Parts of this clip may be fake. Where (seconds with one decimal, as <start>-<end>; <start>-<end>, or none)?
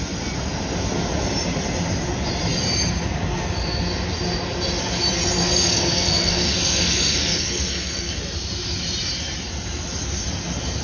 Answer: 5.4-8.1